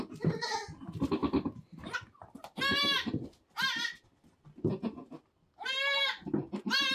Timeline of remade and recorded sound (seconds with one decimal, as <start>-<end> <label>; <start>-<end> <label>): 0.0-1.2 recorded; 1.2-4.0 remade; 4.0-6.9 recorded

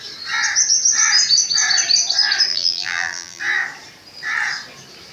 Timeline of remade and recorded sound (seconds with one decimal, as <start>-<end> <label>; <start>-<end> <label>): 0.0-2.5 recorded; 2.5-3.4 remade; 3.4-5.1 recorded

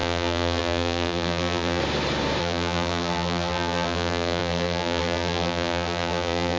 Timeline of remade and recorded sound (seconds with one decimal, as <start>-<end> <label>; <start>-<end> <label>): 0.0-1.8 remade; 1.8-2.4 recorded; 2.4-6.6 remade

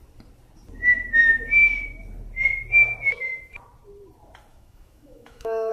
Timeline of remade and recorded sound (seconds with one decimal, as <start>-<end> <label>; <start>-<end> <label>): 0.0-4.5 recorded; 4.5-5.7 remade

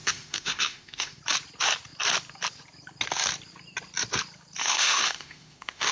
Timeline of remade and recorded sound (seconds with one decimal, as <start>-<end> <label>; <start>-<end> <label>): 0.0-1.2 remade; 1.2-4.6 recorded; 4.6-5.9 remade

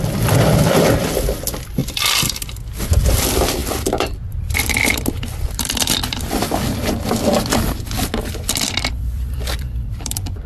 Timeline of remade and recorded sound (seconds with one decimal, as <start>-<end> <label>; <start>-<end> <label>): 0.0-1.8 remade; 1.8-2.9 recorded; 2.9-7.3 remade; 7.3-8.3 recorded; 8.3-10.5 remade

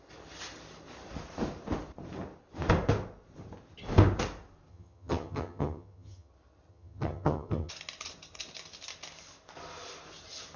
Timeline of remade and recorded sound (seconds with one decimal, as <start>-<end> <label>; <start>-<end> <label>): 0.0-4.7 recorded; 4.7-6.3 remade; 6.3-6.7 recorded; 6.7-7.7 remade; 7.7-10.6 recorded